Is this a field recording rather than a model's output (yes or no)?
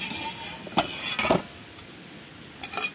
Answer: yes